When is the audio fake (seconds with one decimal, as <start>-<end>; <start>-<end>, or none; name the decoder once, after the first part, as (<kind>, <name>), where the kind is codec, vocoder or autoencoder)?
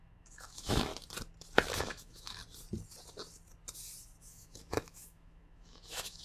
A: 0.0-0.9 (autoencoder, DAC-VAE); 1.8-2.4; 4.2-6.2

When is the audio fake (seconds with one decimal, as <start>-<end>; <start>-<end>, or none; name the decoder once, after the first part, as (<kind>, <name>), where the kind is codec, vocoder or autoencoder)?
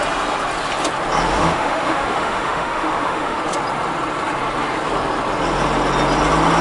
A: 1.3-3.4 (autoencoder, DAC-VAE)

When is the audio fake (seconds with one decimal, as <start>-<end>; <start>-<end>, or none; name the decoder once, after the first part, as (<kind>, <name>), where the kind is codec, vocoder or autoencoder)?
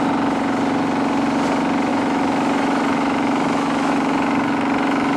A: 1.9-5.2 (autoencoder, DAC-VAE)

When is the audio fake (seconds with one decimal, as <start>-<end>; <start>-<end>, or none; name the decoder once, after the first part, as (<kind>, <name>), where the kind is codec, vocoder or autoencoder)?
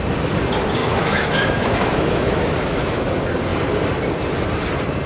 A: 0.8-3.1 (autoencoder, DAC-VAE)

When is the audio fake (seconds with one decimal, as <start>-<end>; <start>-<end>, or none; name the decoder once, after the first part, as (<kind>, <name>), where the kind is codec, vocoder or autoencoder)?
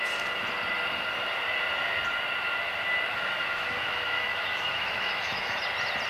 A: 3.1-5.6 (autoencoder, DAC-VAE)